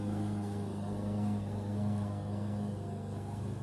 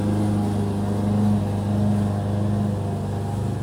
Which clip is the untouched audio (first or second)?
second